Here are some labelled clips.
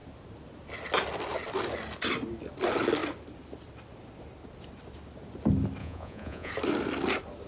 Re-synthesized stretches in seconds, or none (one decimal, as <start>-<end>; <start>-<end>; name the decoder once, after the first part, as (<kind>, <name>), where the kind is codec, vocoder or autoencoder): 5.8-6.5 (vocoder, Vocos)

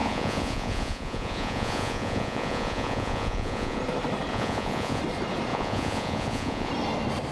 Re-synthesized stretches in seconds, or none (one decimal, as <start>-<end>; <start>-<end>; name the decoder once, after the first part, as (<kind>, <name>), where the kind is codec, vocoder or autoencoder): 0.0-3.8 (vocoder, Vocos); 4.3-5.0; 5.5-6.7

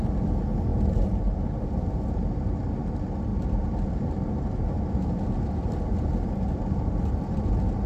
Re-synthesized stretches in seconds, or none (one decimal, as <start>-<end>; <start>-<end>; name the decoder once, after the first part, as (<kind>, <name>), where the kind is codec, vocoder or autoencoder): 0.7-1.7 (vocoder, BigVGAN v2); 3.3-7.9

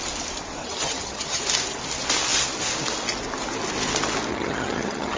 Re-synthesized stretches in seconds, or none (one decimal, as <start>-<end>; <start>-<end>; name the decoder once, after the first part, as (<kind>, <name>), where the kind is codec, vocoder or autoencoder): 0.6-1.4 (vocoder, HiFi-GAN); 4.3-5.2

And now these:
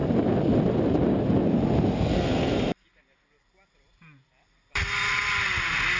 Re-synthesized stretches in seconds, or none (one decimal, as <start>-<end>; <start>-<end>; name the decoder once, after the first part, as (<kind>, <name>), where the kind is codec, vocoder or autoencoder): 0.0-3.0 (vocoder, BigVGAN v2)